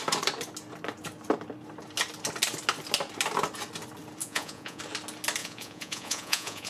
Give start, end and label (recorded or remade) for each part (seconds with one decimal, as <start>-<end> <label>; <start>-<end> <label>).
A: 0.0-4.2 recorded; 4.2-4.8 remade; 4.8-5.4 recorded; 5.4-6.7 remade